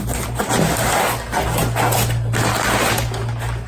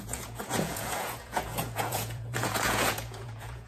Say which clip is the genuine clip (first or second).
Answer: first